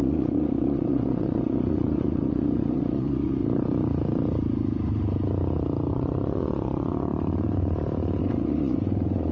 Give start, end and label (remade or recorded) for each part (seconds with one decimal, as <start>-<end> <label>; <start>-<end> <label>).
0.0-3.4 remade; 3.4-5.9 recorded; 5.9-7.1 remade; 7.1-8.2 recorded; 8.2-9.3 remade